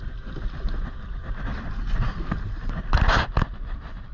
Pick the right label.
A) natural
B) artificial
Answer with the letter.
A